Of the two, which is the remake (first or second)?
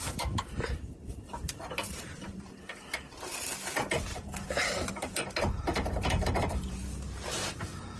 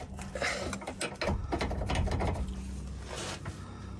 first